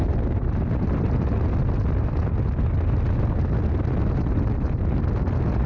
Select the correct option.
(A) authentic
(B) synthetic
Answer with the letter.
A